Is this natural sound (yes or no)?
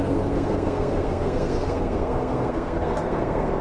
no